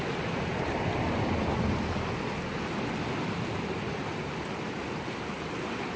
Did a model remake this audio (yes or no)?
no